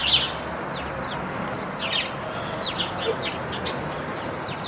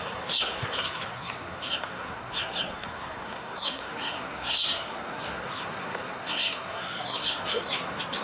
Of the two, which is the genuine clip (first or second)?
first